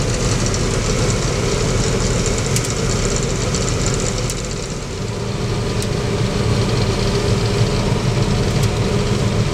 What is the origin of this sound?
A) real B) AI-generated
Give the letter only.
A